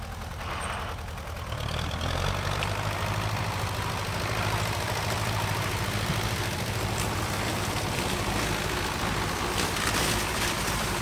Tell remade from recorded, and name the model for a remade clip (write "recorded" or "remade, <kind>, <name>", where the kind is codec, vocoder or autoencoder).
remade, vocoder, BigVGAN v2